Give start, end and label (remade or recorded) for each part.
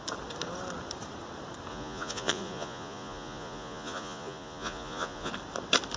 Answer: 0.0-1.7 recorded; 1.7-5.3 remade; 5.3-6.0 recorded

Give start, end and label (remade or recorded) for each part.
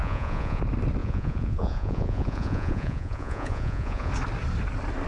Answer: 0.0-0.6 remade; 0.6-1.0 recorded; 1.0-4.1 remade; 4.1-5.1 recorded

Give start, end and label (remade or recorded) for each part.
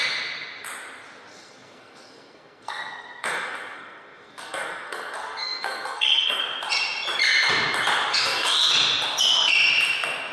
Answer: 0.0-1.3 recorded; 1.3-6.4 remade; 6.4-8.1 recorded; 8.1-8.7 remade; 8.7-10.3 recorded